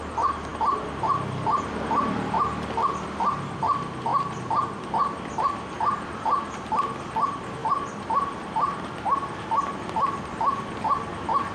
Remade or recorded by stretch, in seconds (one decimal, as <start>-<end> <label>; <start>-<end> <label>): 0.0-11.5 recorded